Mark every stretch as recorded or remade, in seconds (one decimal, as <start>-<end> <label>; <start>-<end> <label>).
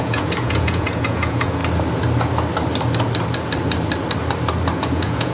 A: 0.0-1.6 remade; 1.6-4.8 recorded; 4.8-5.3 remade